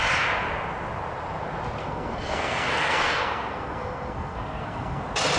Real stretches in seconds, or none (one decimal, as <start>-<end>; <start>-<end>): 0.0-1.8; 5.0-5.4